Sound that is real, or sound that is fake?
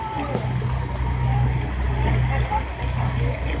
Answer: real